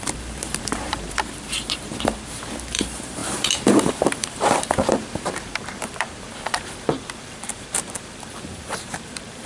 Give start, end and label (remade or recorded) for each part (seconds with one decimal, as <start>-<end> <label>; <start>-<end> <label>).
0.0-9.5 remade